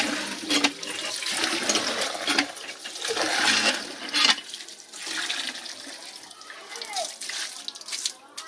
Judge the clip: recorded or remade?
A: recorded